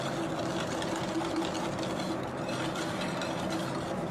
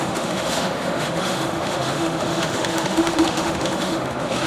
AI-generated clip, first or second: second